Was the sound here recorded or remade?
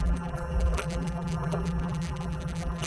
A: remade